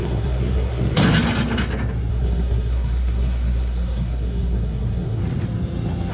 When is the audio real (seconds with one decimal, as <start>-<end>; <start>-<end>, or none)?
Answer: 1.0-2.1; 5.2-6.1